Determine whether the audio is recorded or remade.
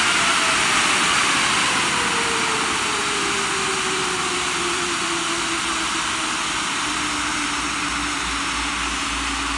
recorded